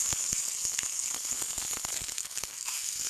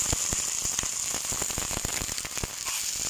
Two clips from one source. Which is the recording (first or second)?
second